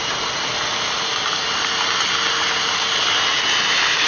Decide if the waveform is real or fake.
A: real